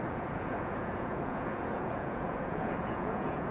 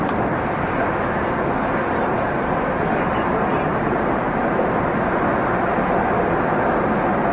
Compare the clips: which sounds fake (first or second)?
first